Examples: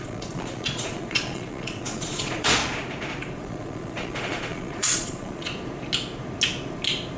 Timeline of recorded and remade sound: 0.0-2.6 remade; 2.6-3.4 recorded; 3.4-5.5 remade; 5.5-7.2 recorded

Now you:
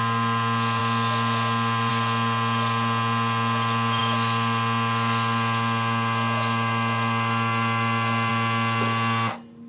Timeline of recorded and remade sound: 0.0-9.7 recorded

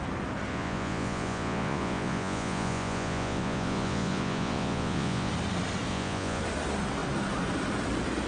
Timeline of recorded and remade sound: 0.0-0.5 recorded; 0.5-5.3 remade; 5.3-5.9 recorded; 5.9-6.4 remade; 6.4-8.3 recorded

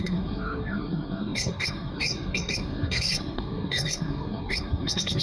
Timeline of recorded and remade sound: 0.0-5.2 remade

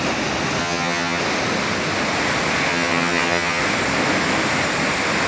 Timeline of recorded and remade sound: 0.0-0.6 recorded; 0.6-1.2 remade; 1.2-2.7 recorded; 2.7-3.6 remade; 3.6-5.3 recorded

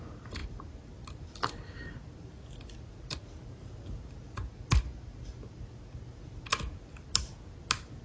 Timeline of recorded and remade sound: 0.0-8.0 recorded

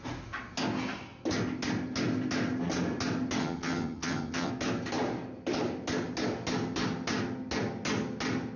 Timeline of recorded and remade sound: 0.0-3.4 recorded; 3.4-4.5 remade; 4.5-8.6 recorded